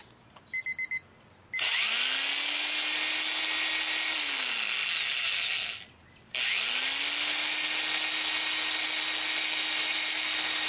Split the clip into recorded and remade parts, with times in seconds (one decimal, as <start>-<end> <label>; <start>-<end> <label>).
0.0-10.7 recorded